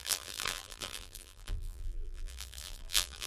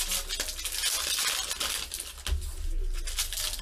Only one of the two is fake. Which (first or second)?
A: first